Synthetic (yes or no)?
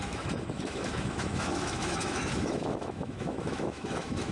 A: yes